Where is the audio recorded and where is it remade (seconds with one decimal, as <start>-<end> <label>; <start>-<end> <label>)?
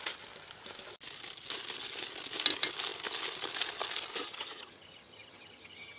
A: 0.0-4.2 recorded; 4.2-6.0 remade